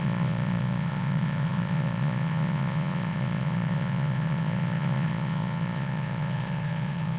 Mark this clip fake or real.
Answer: fake